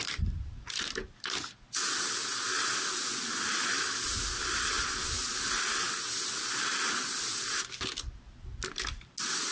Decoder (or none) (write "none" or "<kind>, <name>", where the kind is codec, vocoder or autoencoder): none